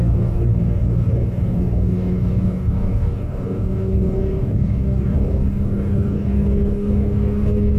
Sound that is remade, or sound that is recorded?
remade